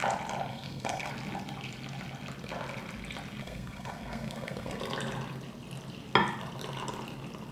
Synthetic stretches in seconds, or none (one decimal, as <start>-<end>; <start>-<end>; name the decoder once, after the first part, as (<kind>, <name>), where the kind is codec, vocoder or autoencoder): 0.5-1.1 (codec, SNAC); 3.4-4.8